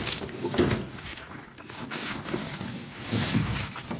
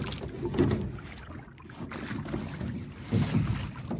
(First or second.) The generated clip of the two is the first